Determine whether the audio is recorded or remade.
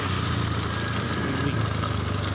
recorded